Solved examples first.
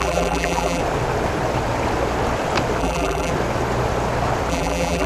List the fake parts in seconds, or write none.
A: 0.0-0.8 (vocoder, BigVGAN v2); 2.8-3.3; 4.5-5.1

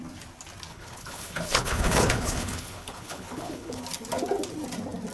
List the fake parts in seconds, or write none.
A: 0.7-3.8 (codec, HILCodec)